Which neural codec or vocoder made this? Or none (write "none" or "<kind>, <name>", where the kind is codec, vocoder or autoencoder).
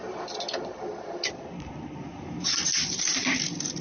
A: none